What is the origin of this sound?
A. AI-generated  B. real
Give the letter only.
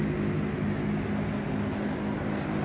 B